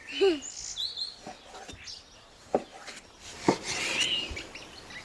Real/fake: real